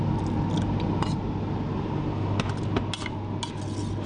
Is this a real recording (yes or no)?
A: yes